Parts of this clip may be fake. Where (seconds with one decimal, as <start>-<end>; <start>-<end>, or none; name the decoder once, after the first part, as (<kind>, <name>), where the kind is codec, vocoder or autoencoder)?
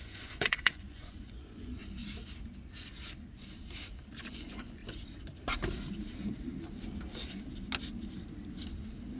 0.0-1.8 (vocoder, Vocos); 4.3-4.8